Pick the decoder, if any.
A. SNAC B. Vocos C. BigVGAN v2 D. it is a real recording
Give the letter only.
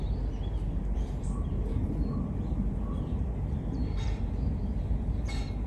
C